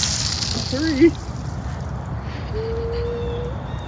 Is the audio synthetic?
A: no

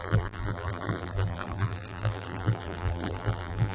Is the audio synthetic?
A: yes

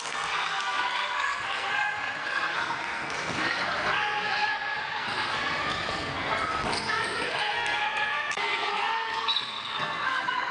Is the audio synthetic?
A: yes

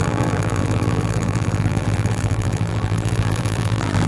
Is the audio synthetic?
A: yes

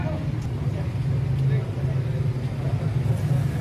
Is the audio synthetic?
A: no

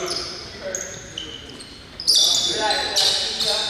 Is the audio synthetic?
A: no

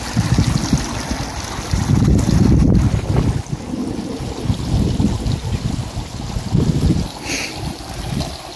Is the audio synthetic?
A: no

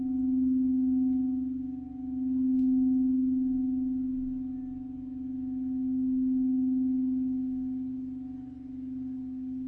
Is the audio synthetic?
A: no